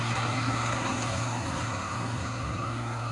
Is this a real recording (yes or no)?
no